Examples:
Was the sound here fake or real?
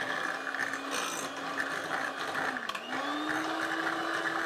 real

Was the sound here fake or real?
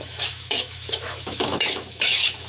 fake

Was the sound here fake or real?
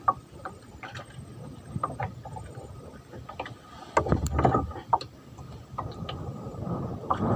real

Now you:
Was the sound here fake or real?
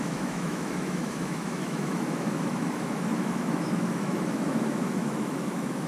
fake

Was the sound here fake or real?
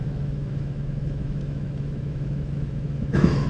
fake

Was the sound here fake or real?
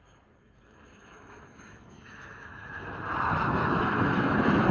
fake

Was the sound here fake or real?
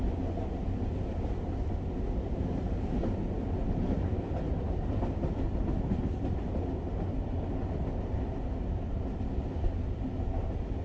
real